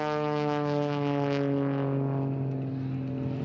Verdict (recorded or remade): recorded